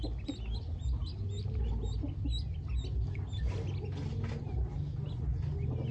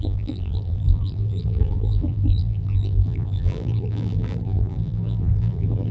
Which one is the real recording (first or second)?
first